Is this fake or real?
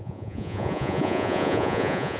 fake